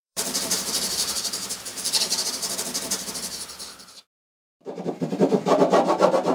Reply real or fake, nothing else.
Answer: fake